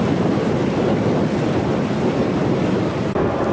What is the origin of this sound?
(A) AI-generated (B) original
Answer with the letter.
B